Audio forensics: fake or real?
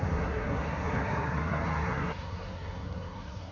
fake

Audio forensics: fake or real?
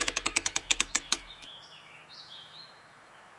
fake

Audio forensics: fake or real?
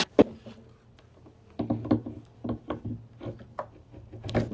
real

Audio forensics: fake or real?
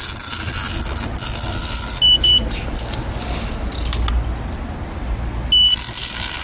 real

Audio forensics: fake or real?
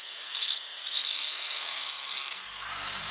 fake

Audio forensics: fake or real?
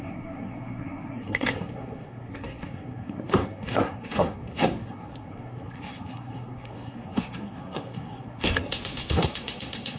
fake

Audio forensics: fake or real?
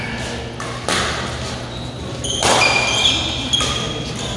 real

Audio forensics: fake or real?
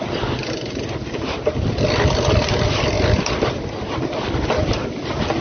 real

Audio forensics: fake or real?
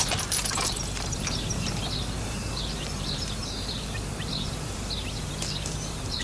fake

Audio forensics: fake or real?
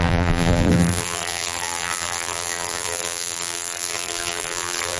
fake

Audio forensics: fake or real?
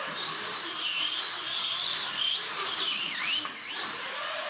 real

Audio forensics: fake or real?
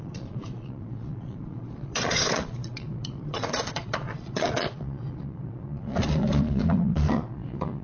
fake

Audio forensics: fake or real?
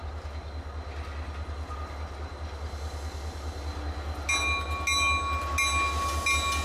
real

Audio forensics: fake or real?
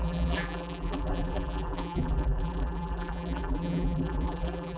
fake